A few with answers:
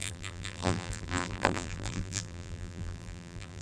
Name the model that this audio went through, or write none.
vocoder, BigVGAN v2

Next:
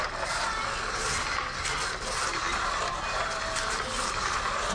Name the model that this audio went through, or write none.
none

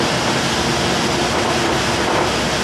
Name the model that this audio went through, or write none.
none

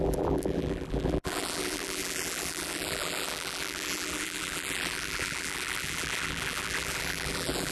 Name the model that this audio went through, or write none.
vocoder, BigVGAN v2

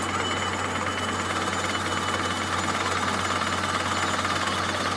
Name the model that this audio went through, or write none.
none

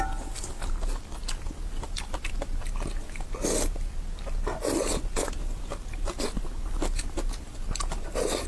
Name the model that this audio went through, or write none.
none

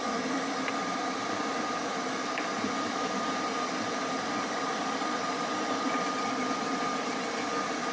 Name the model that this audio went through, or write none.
vocoder, BigVGAN v2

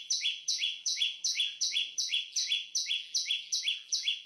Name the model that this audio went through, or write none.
vocoder, BigVGAN v2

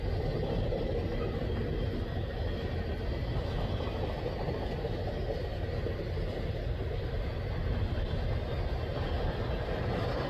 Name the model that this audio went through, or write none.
none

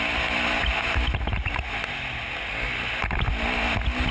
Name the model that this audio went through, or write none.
none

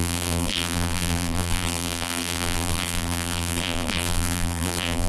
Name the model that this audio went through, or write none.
vocoder, BigVGAN v2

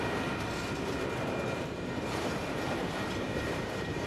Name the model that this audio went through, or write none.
vocoder, BigVGAN v2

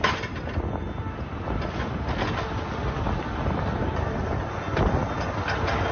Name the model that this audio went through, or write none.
none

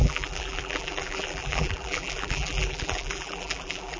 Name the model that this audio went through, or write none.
vocoder, BigVGAN v2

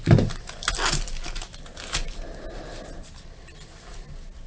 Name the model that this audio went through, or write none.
none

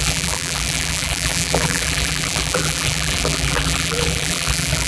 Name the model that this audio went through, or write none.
vocoder, BigVGAN v2